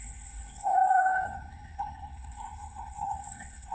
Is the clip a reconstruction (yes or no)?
yes